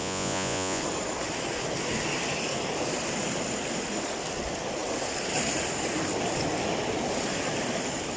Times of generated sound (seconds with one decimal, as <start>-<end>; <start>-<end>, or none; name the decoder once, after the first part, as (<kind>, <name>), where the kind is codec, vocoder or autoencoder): 0.0-0.8 (vocoder, Vocos)